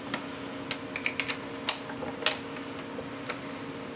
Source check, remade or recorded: recorded